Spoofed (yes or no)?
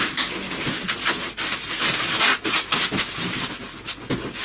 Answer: yes